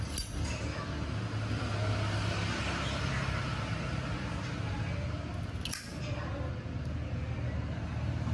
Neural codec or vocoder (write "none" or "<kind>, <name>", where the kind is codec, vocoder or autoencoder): none